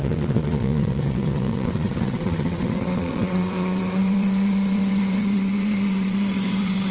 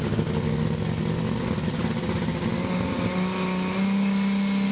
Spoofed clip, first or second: first